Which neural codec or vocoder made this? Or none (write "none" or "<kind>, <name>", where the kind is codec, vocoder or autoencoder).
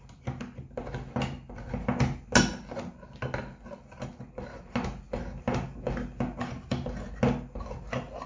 none